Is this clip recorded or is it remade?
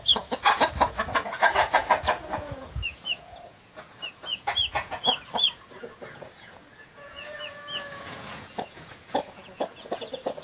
remade